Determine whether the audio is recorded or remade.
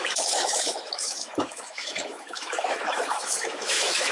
remade